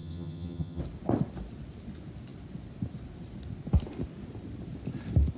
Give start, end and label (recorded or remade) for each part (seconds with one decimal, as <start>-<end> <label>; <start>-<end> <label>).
0.0-0.8 remade; 0.8-5.4 recorded